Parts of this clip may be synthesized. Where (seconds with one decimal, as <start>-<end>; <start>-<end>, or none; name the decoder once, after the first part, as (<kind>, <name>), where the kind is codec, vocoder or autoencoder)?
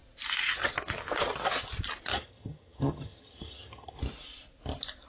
2.1-4.0 (vocoder, HiFi-GAN)